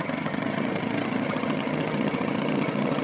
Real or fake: fake